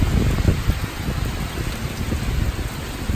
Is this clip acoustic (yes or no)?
yes